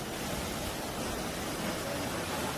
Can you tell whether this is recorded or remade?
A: recorded